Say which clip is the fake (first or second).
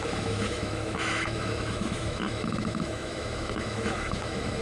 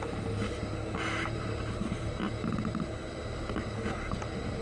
first